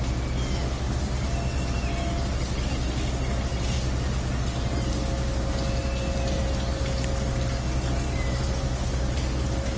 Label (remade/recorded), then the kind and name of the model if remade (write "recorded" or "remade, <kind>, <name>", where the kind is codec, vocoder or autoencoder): recorded